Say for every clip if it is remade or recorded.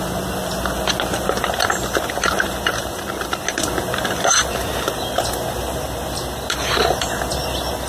recorded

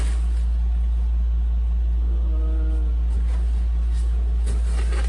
recorded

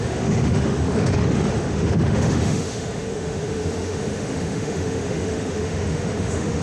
remade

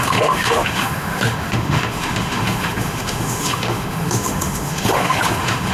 remade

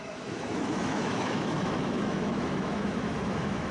remade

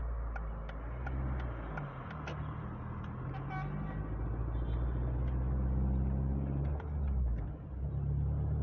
recorded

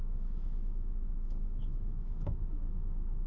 remade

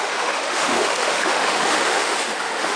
remade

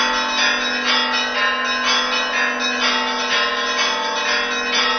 recorded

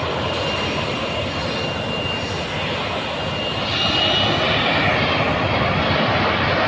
recorded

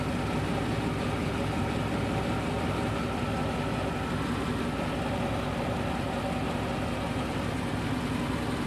recorded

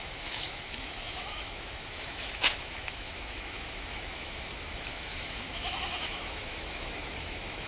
remade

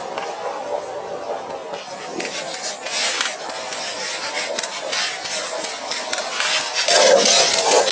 recorded